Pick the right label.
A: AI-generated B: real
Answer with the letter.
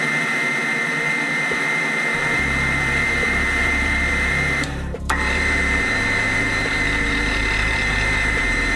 A